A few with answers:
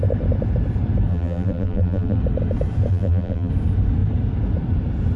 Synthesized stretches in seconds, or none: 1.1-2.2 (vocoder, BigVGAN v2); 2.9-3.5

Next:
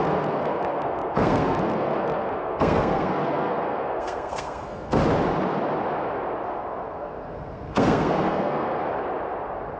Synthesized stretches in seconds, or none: 0.0-5.0 (codec, SNAC); 6.5-8.8

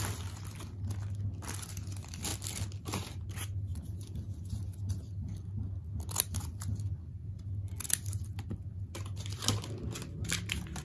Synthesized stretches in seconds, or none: none